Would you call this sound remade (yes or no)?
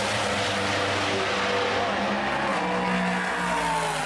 no